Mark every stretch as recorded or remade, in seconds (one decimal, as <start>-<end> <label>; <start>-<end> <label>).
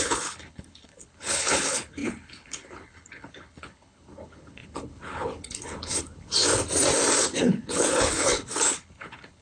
0.0-6.5 remade; 6.5-7.2 recorded; 7.2-9.4 remade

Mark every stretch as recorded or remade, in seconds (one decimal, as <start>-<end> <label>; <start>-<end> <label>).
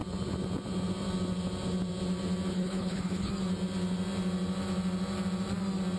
0.0-2.5 recorded; 2.5-3.3 remade; 3.3-6.0 recorded